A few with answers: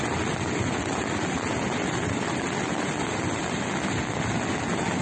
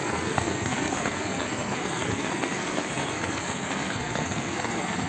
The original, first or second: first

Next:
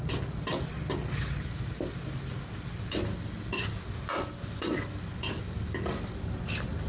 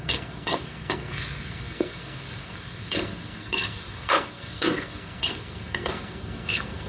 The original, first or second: first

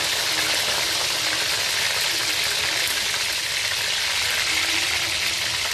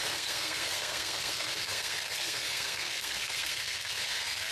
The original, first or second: first